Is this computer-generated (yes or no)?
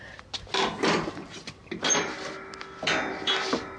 no